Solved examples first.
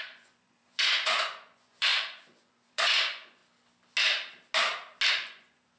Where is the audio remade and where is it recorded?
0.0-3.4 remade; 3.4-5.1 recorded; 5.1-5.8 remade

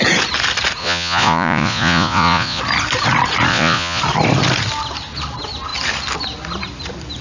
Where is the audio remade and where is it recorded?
0.0-0.8 recorded; 0.8-2.6 remade; 2.6-3.5 recorded; 3.5-4.0 remade; 4.0-7.2 recorded

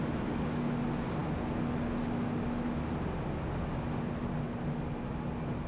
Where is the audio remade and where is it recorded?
0.0-5.7 recorded

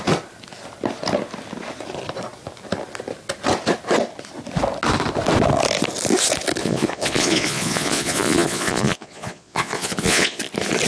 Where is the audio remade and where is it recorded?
0.0-6.6 recorded; 6.6-10.4 remade; 10.4-10.9 recorded